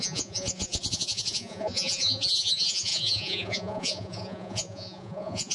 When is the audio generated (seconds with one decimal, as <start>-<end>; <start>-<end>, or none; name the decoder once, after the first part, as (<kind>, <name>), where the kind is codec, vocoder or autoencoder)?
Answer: 0.0-5.5 (vocoder, Vocos)